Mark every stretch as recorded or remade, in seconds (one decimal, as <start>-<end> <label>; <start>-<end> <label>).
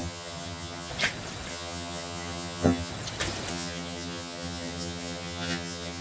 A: 0.0-0.9 remade; 0.9-1.5 recorded; 1.5-2.9 remade; 2.9-3.5 recorded; 3.5-6.0 remade